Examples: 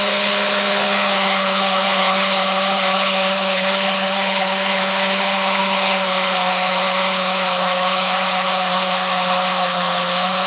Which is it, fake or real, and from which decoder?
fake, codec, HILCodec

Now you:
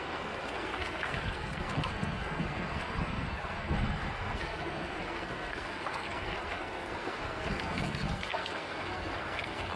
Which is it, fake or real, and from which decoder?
fake, codec, SNAC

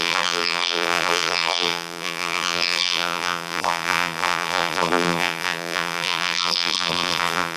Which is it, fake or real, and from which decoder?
fake, vocoder, BigVGAN v2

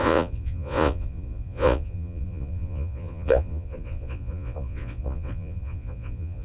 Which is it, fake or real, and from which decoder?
fake, vocoder, Vocos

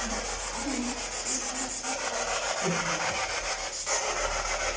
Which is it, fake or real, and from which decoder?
real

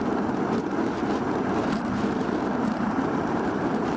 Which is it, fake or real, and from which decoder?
fake, vocoder, BigVGAN v2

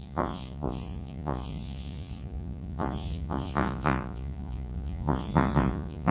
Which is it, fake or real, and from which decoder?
fake, vocoder, Vocos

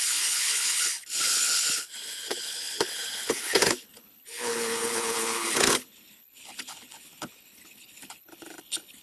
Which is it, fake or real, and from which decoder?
fake, codec, HILCodec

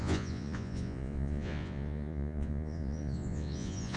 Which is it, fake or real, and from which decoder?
fake, vocoder, Vocos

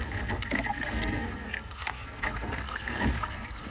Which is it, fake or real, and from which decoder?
fake, codec, SNAC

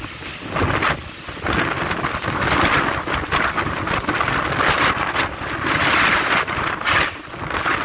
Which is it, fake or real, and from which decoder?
real